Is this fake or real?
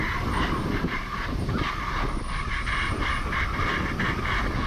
real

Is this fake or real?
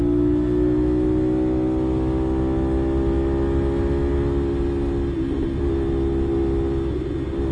real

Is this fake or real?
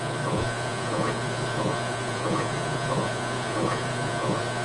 fake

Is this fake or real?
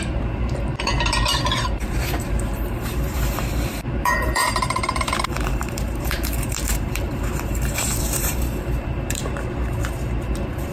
fake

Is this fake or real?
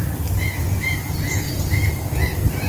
real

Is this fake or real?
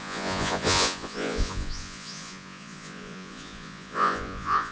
fake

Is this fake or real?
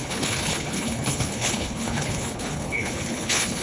fake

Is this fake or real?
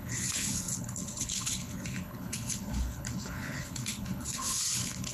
fake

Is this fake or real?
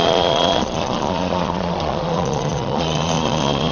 fake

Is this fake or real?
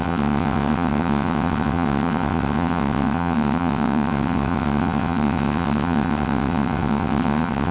fake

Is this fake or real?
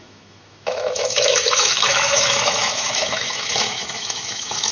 fake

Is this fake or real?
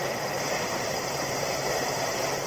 real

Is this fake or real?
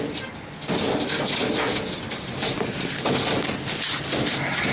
real